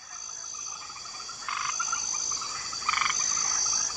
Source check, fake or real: real